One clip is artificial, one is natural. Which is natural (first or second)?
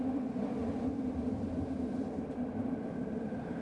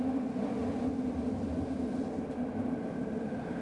second